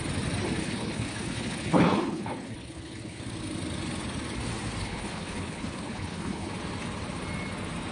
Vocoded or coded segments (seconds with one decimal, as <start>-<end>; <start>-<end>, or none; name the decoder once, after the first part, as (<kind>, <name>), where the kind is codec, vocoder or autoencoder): 0.6-3.2 (codec, HILCodec); 4.8-6.5